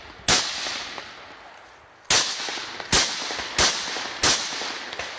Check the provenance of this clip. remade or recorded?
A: recorded